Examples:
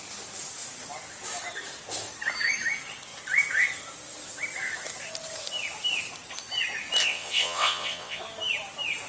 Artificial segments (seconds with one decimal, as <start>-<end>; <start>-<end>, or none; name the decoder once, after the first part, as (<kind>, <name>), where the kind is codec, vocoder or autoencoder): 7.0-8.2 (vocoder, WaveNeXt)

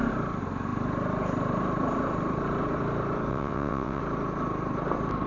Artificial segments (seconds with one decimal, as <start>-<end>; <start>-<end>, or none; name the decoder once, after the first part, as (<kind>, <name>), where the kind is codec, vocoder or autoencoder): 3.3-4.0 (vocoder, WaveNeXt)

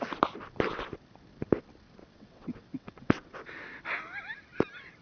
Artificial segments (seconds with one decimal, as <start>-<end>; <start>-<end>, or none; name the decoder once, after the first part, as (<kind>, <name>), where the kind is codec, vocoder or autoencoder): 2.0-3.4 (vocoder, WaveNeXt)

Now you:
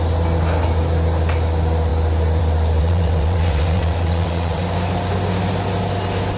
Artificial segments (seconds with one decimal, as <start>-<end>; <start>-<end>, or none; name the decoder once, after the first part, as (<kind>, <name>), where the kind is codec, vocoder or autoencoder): 2.8-4.6 (vocoder, WaveNeXt)